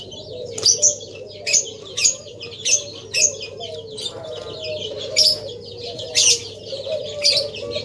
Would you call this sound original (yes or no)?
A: yes